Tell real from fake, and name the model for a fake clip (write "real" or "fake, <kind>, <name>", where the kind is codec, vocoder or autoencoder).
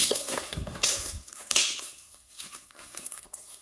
fake, codec, SNAC